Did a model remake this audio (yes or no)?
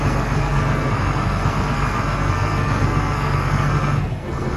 yes